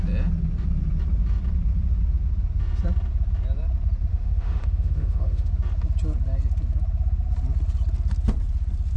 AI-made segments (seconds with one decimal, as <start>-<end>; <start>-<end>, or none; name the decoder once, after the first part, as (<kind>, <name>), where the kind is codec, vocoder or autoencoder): 4.1-5.5 (autoencoder, DAC-VAE)